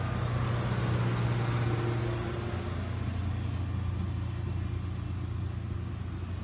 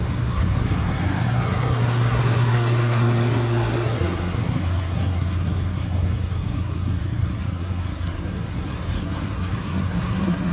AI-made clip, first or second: second